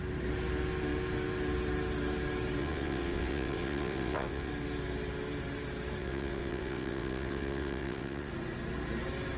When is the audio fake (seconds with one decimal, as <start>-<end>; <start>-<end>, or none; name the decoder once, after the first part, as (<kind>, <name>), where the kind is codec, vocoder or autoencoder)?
2.6-4.5 (vocoder, WaveNeXt); 6.0-8.3